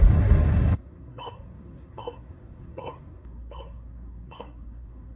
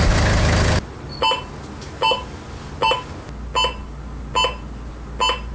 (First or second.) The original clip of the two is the second